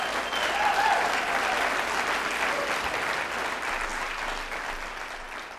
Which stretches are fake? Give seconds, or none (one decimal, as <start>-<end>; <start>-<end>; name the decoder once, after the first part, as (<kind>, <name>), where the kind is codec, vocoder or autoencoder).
none

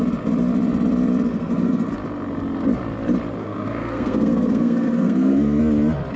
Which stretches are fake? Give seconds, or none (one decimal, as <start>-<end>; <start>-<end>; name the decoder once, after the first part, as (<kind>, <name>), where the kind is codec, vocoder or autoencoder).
1.3-1.9 (codec, SNAC); 3.4-5.6